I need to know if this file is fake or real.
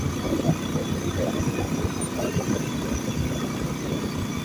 real